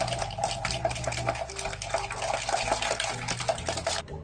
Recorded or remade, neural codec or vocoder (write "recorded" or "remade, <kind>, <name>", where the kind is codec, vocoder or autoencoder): recorded